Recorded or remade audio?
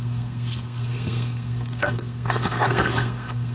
remade